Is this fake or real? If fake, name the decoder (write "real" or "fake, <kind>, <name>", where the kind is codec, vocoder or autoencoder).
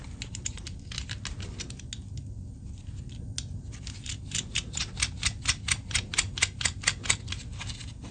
real